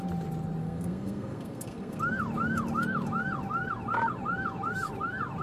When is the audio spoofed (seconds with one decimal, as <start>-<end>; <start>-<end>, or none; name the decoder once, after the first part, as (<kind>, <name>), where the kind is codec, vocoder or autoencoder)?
0.6-2.0 (codec, SNAC)